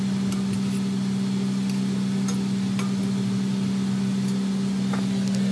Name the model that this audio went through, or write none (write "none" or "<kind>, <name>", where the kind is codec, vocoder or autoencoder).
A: none